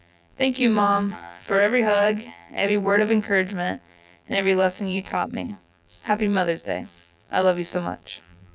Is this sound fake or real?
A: fake